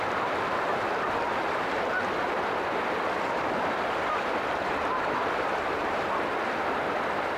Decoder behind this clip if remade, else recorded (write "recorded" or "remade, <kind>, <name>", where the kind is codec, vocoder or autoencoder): remade, vocoder, BigVGAN v2